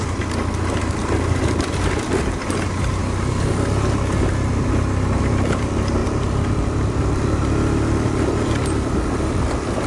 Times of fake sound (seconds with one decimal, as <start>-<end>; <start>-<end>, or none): 0.0-3.0; 5.2-9.9